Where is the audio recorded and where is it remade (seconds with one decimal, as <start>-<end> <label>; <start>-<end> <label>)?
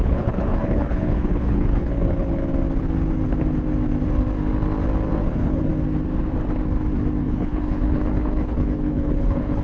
0.0-2.4 remade; 2.4-5.2 recorded; 5.2-5.7 remade; 5.7-7.2 recorded; 7.2-9.6 remade